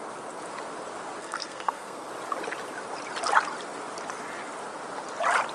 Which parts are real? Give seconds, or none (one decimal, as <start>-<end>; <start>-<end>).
0.0-1.2; 2.1-5.5